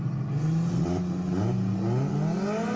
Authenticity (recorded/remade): recorded